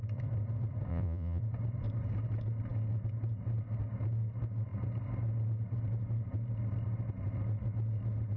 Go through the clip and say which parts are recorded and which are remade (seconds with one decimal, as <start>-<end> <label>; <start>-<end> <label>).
0.0-0.9 recorded; 0.9-1.4 remade; 1.4-8.4 recorded